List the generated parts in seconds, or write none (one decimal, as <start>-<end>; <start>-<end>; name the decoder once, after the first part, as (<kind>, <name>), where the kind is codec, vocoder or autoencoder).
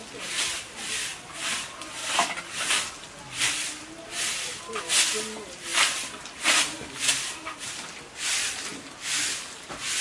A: 1.2-2.0 (vocoder, BigVGAN v2); 4.6-8.7